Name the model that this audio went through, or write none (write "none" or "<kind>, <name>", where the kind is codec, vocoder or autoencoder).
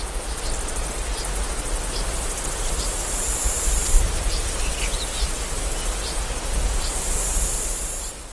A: none